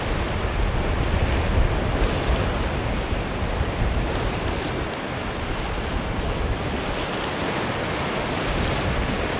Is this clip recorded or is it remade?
recorded